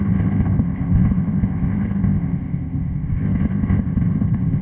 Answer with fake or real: fake